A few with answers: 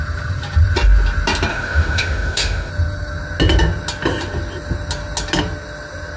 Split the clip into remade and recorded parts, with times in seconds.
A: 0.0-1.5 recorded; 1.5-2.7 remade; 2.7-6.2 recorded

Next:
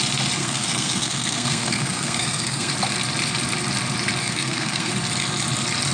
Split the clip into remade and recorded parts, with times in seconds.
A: 0.0-0.4 recorded; 0.4-2.7 remade; 2.7-4.2 recorded; 4.2-4.9 remade; 4.9-5.9 recorded

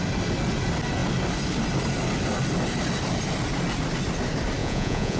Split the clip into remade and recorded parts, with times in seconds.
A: 0.0-4.6 recorded; 4.6-5.2 remade